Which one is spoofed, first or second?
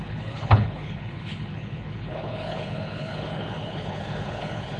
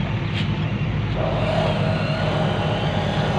first